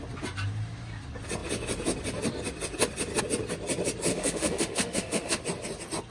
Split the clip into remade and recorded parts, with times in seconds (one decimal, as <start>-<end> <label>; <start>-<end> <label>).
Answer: 0.0-4.1 recorded; 4.1-5.4 remade; 5.4-6.1 recorded